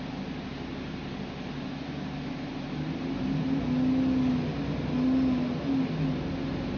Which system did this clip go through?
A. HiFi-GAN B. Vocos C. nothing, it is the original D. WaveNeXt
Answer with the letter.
C